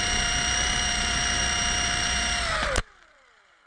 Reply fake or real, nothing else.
fake